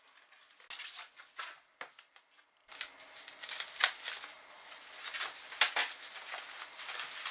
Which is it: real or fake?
real